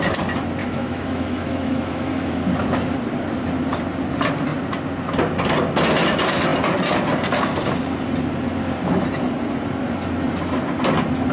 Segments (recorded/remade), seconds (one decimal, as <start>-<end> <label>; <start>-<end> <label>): 0.0-0.6 recorded; 0.6-2.3 remade; 2.3-11.3 recorded